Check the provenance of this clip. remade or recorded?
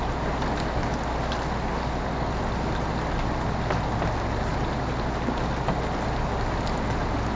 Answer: recorded